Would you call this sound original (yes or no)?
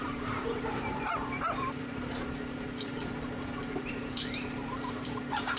no